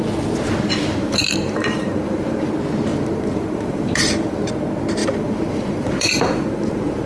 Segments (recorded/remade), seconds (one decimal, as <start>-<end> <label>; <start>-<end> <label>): 0.0-0.9 recorded; 0.9-2.5 remade; 2.5-2.9 recorded; 2.9-4.4 remade; 4.4-5.0 recorded; 5.0-7.1 remade